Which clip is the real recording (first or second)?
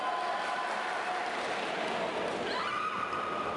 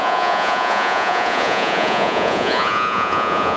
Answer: first